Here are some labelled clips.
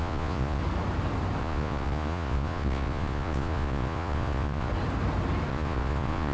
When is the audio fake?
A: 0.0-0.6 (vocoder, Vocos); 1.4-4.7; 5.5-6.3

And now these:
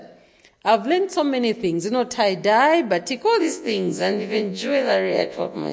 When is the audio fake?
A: 3.4-5.7 (vocoder, Vocos)

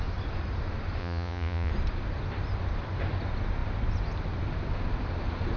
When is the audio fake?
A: 1.0-1.7 (vocoder, Vocos)

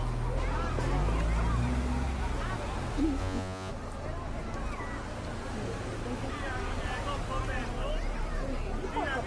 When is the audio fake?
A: 3.2-3.7 (vocoder, Vocos)

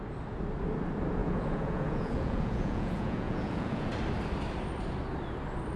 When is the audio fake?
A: 1.2-3.9 (vocoder, Vocos)